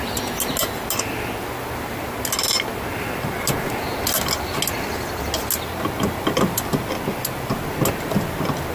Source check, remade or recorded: recorded